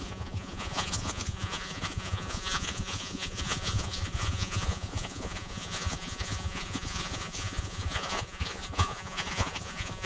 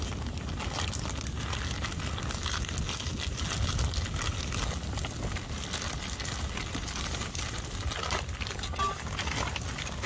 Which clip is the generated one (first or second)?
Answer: first